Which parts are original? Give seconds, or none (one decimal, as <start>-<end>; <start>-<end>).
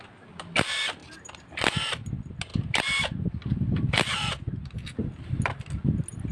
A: 0.0-2.5; 3.3-6.3